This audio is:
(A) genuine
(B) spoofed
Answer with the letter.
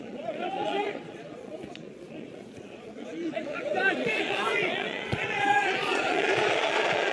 B